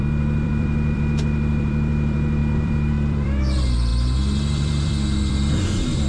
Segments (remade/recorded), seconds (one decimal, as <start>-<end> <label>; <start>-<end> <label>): 0.0-6.1 remade